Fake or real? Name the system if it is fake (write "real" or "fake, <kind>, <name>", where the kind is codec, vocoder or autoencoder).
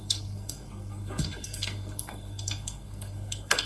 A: fake, codec, SNAC